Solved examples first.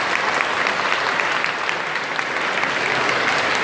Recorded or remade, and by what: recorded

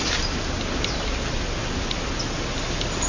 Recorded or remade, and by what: recorded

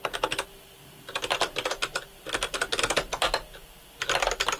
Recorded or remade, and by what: recorded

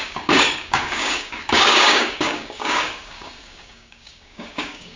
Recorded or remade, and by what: remade, codec, DAC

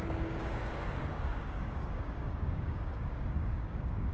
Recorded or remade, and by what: remade, codec, DAC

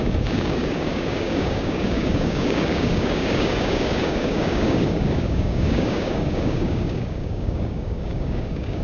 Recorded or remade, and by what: remade, codec, DAC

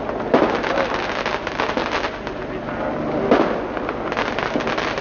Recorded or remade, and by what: recorded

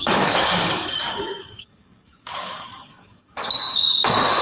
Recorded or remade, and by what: remade, codec, DAC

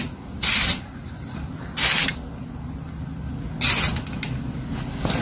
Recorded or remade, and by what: recorded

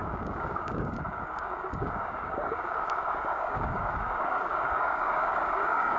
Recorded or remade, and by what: remade, codec, DAC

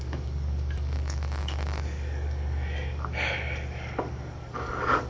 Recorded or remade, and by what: remade, codec, DAC